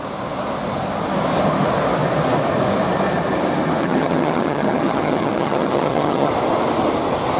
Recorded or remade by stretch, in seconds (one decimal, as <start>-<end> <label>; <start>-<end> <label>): 0.0-3.8 recorded; 3.8-6.3 remade; 6.3-7.4 recorded